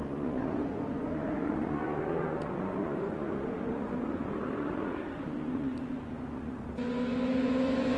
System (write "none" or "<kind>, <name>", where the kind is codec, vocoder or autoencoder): vocoder, Vocos